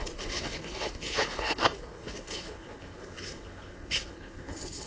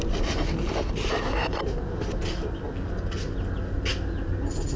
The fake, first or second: first